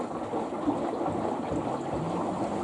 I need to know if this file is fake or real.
real